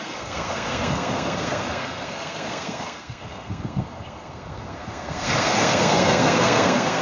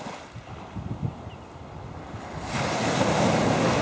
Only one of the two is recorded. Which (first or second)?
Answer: second